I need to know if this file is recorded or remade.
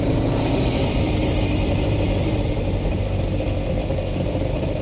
remade